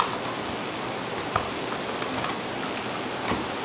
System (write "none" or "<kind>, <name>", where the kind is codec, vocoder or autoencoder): none